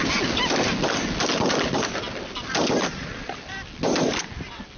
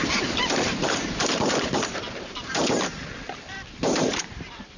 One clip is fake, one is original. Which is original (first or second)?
first